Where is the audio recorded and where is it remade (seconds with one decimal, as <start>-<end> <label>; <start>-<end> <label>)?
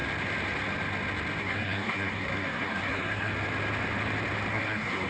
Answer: 0.0-1.4 recorded; 1.4-3.3 remade; 3.3-4.5 recorded; 4.5-5.1 remade